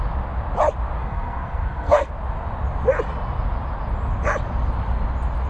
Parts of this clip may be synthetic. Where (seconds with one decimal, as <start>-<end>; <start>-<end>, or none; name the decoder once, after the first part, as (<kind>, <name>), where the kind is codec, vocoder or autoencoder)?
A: 1.0-2.1 (codec, SNAC)